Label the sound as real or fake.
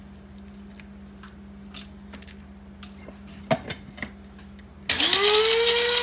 real